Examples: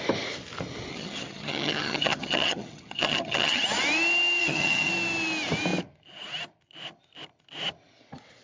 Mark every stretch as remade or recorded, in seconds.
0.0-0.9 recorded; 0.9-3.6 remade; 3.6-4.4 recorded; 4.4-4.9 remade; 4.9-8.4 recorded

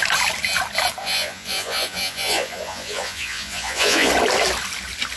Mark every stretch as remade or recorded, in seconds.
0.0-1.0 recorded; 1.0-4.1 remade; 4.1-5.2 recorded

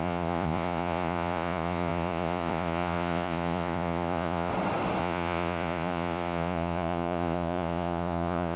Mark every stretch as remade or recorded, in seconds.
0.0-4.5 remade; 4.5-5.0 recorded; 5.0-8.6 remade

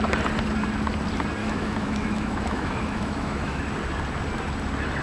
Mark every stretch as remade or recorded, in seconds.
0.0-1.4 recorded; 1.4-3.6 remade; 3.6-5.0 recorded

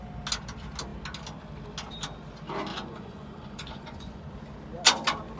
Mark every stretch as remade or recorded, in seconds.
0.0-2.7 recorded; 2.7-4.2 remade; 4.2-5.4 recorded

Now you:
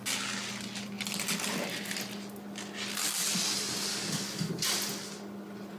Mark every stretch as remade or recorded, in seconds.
0.0-3.9 recorded; 3.9-4.5 remade; 4.5-5.8 recorded